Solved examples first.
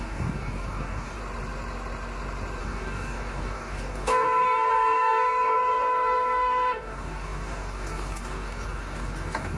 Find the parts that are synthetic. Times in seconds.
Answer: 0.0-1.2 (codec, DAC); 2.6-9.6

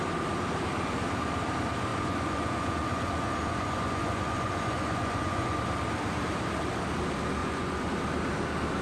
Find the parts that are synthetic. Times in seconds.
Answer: 1.9-5.6 (vocoder, Vocos); 7.4-7.9